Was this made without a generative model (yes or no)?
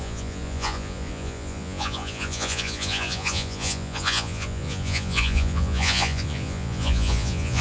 no